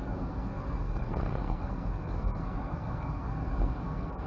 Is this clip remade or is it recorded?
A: remade